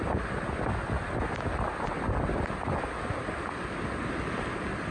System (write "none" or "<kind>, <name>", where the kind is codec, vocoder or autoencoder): none